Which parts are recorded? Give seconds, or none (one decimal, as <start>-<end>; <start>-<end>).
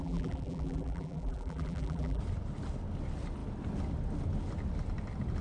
2.2-5.4